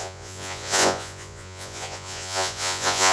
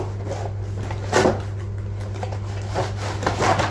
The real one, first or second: second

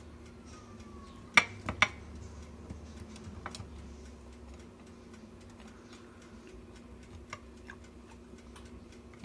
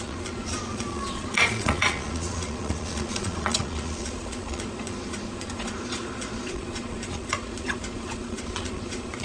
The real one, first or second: first